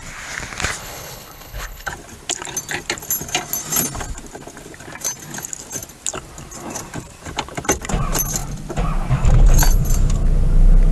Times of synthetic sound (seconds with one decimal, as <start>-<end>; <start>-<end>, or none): 0.8-1.9